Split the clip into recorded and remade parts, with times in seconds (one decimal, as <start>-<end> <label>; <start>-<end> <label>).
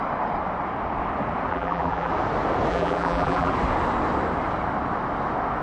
0.0-1.5 recorded; 1.5-2.1 remade; 2.1-2.7 recorded; 2.7-3.5 remade; 3.5-5.6 recorded